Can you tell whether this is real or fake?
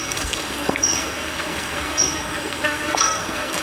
fake